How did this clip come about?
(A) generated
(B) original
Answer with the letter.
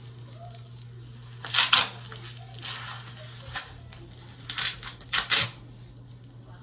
B